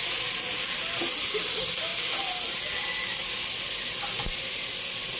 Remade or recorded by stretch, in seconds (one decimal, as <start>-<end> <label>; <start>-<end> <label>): 0.0-5.2 recorded